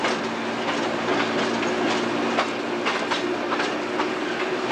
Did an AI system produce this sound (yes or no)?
no